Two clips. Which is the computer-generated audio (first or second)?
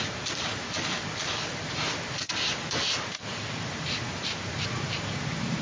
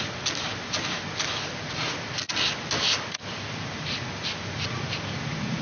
first